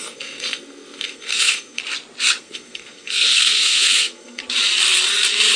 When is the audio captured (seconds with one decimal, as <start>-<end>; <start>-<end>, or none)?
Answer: 1.8-2.4; 4.4-5.6